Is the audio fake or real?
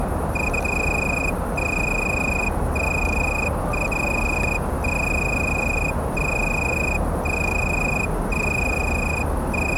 real